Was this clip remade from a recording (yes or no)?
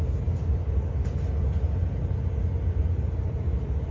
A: no